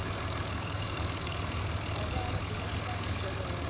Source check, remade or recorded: remade